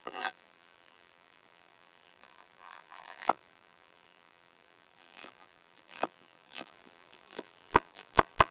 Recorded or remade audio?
remade